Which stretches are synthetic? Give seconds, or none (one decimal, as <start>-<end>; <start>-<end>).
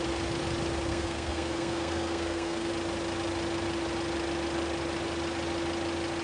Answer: 0.9-2.7